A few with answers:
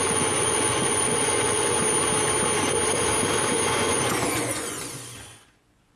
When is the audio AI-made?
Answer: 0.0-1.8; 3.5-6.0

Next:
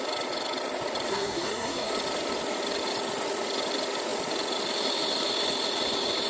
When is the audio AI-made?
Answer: 1.1-1.9

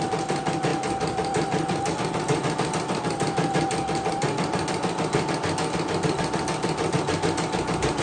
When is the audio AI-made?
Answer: none

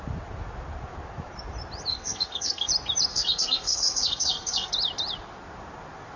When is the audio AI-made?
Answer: 1.9-2.7; 3.1-4.7

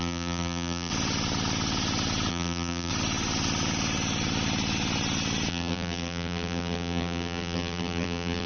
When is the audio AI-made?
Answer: 0.0-0.9; 2.3-2.9; 5.5-8.5